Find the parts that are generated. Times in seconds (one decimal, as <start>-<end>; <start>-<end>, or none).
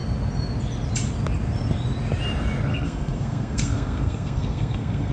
2.7-5.1